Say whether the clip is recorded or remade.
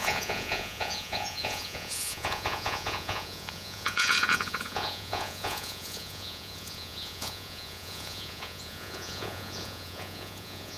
remade